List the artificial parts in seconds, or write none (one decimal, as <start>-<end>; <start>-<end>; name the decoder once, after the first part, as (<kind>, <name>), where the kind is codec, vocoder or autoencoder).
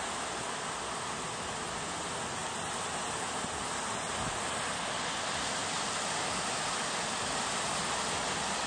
5.6-7.4 (vocoder, BigVGAN v2)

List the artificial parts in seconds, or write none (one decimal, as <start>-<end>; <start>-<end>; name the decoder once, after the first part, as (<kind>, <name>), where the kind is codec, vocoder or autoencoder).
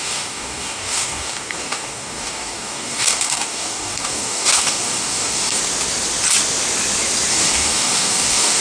0.0-5.6 (codec, DAC); 7.3-8.6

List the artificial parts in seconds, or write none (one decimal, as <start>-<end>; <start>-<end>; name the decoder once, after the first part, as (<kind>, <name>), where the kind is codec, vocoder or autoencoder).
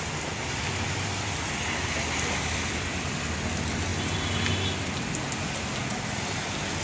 none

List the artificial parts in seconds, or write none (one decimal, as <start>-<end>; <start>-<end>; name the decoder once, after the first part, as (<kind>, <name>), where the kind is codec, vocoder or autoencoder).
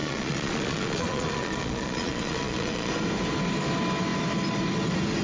0.0-2.9 (vocoder, Vocos)